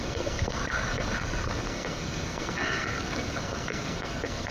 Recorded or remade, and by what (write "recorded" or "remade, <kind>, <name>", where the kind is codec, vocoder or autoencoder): remade, codec, SNAC